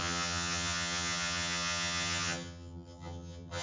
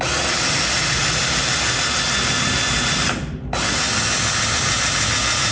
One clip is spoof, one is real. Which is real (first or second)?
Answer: second